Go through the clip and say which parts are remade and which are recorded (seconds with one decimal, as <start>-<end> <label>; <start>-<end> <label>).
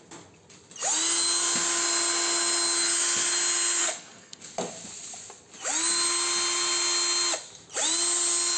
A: 0.0-3.8 recorded; 3.8-4.4 remade; 4.4-8.6 recorded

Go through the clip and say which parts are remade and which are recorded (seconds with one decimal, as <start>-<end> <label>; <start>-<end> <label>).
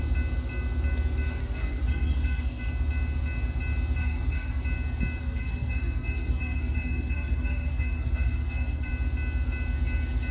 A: 0.0-1.4 recorded; 1.4-2.6 remade; 2.6-4.0 recorded; 4.0-4.6 remade; 4.6-5.2 recorded; 5.2-8.9 remade; 8.9-10.3 recorded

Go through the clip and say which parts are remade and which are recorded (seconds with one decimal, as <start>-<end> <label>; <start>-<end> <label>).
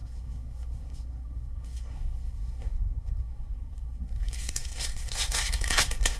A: 0.0-6.2 remade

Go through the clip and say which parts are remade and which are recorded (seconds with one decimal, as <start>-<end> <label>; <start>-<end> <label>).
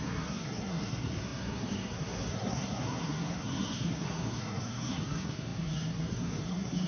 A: 0.0-6.9 remade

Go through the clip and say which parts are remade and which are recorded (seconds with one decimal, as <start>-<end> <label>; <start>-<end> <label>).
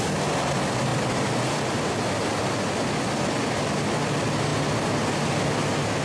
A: 0.0-6.0 recorded